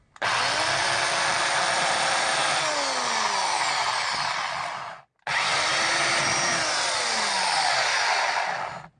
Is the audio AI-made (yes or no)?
no